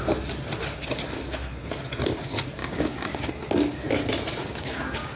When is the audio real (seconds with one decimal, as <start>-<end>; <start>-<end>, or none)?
0.0-2.6; 3.3-4.4